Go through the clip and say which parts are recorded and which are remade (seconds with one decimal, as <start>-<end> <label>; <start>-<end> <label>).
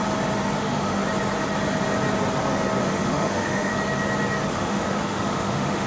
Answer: 0.0-0.6 recorded; 0.6-1.0 remade; 1.0-2.8 recorded; 2.8-3.7 remade; 3.7-4.5 recorded; 4.5-5.9 remade